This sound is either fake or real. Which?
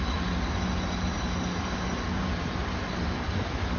fake